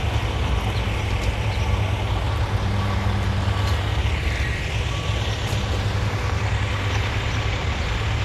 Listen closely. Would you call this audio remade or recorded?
recorded